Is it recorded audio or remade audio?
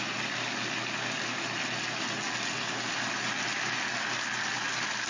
recorded